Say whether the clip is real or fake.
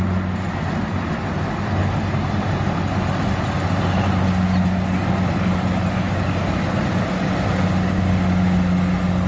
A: real